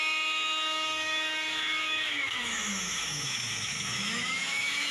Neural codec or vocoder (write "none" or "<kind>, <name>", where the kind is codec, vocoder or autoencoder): autoencoder, DAC-VAE